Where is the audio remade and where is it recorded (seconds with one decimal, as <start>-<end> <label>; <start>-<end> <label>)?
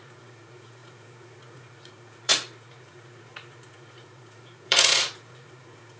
0.0-6.0 remade